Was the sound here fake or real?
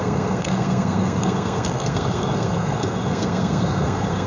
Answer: fake